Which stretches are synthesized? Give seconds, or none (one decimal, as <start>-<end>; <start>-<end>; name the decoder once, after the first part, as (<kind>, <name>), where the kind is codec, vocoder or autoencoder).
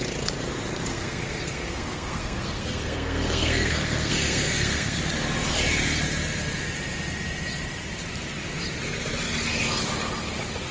0.9-5.0 (codec, SNAC)